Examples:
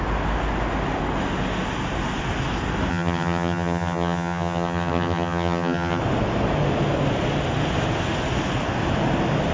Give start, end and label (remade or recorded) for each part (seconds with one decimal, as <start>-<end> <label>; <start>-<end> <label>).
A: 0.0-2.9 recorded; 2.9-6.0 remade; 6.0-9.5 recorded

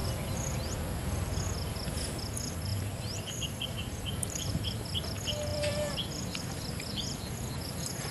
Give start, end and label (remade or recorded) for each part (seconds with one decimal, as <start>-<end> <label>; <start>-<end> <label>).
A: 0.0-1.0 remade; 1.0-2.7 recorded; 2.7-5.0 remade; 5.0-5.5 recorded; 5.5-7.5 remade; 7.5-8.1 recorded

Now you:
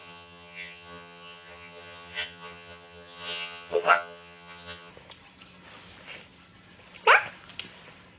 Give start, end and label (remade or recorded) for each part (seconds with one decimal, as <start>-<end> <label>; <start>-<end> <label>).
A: 0.0-4.9 remade; 4.9-8.2 recorded

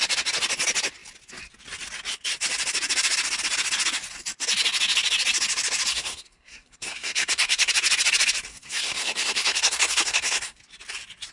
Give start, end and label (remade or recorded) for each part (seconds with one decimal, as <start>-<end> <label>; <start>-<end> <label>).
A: 0.0-5.9 recorded; 5.9-7.7 remade; 7.7-8.5 recorded; 8.5-10.6 remade; 10.6-11.3 recorded